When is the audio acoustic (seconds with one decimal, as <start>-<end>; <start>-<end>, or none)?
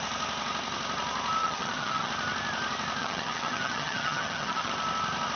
0.0-1.4; 2.1-3.0; 4.7-5.4